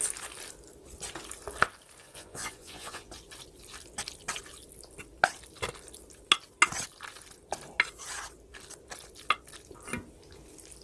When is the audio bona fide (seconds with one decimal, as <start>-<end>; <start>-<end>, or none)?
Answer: 0.0-2.0; 3.1-10.8